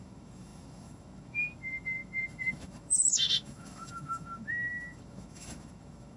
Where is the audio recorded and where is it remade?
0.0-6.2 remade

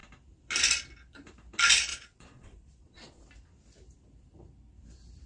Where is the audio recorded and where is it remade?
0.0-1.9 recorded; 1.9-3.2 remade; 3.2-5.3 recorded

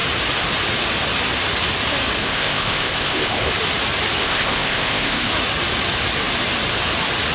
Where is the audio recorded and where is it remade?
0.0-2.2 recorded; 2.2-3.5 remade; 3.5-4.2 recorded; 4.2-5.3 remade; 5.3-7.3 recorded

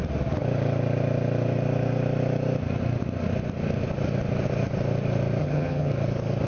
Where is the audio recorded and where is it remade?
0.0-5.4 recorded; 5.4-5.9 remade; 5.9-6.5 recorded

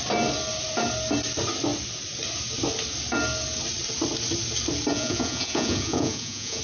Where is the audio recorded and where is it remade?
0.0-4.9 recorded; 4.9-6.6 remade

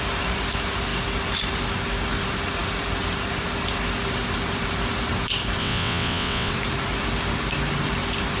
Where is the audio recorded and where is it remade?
0.0-5.6 recorded; 5.6-6.5 remade; 6.5-8.4 recorded

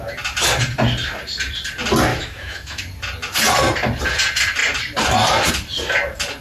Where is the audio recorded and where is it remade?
0.0-2.1 recorded; 2.1-2.8 remade; 2.8-6.4 recorded

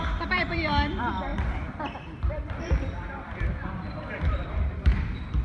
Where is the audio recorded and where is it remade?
0.0-5.4 remade